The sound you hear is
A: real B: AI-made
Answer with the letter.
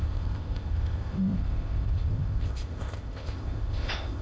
B